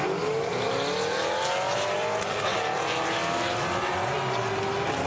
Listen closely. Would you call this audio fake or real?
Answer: real